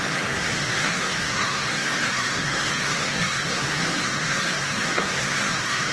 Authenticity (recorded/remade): remade